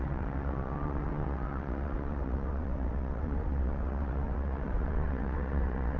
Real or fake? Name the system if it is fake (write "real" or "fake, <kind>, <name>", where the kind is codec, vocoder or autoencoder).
fake, vocoder, WaveNeXt